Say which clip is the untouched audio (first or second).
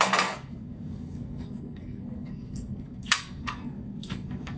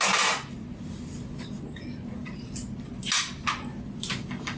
second